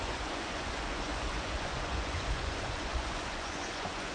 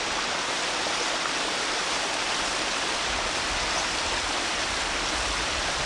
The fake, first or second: first